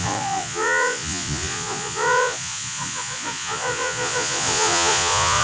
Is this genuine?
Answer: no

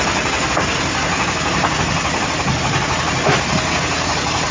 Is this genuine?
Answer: yes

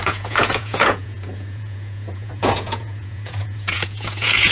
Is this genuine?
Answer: no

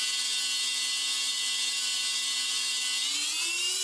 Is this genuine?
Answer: yes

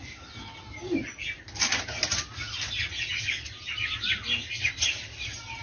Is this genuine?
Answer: yes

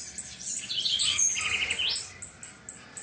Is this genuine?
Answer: yes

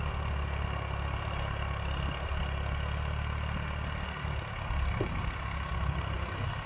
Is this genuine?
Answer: yes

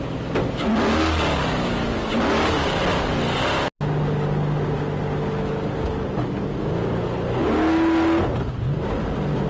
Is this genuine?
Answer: yes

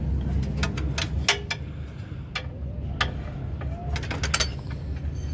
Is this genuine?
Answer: yes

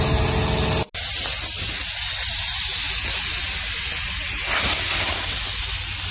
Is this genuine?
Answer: yes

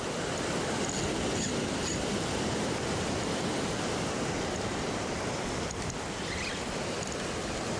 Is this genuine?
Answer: yes